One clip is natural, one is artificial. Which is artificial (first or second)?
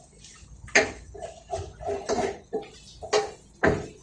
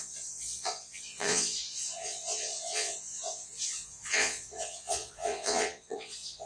second